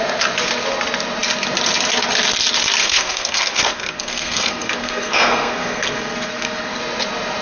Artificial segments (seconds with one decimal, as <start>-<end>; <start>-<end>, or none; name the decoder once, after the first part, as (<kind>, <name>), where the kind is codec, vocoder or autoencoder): 2.8-6.8 (codec, SNAC)

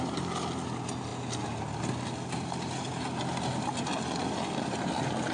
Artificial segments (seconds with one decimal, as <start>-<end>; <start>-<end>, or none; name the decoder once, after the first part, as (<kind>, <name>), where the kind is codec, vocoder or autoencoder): none

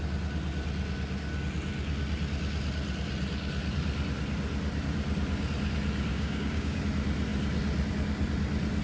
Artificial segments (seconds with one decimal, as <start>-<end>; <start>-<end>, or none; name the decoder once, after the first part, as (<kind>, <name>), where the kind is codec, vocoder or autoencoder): 6.1-6.8 (codec, DAC)

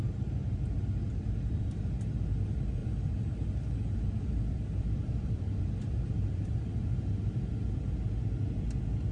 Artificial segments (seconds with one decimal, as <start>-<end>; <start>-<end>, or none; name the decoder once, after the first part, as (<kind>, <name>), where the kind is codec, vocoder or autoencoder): 0.4-1.9 (vocoder, BigVGAN v2); 2.8-6.8

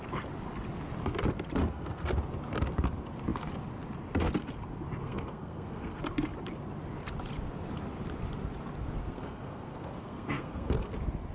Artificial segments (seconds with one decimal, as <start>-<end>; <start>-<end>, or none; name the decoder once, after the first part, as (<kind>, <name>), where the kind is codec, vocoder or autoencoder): 1.6-2.1 (codec, SNAC); 5.0-6.0; 9.0-10.9

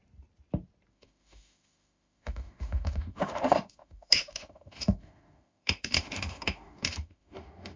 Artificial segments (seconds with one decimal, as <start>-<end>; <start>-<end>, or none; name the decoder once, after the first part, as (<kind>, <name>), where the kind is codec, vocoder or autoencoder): 0.9-7.8 (autoencoder, DAC-VAE)

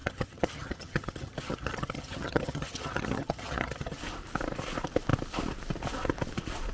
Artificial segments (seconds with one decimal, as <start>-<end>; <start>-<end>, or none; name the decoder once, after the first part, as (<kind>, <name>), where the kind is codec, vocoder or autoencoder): 0.0-4.0 (vocoder, HiFi-GAN)